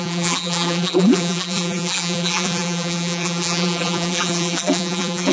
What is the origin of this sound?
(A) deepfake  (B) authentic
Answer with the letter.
A